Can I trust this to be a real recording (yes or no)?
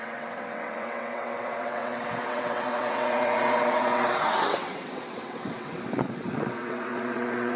no